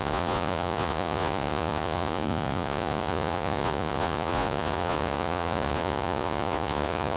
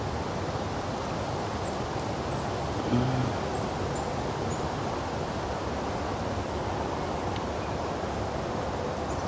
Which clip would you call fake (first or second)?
first